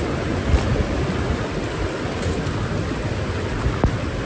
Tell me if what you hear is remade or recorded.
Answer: recorded